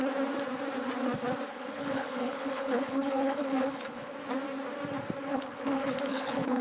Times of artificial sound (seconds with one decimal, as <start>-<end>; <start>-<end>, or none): 1.5-4.1; 5.3-6.6